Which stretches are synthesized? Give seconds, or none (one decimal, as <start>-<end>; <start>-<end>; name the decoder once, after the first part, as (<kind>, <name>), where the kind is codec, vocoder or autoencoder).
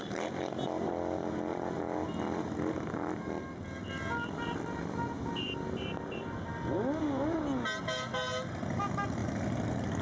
none